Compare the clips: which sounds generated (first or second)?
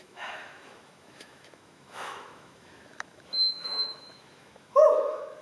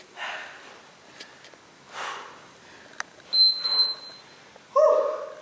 first